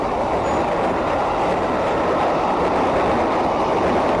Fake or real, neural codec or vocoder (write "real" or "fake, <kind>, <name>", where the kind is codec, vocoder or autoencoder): real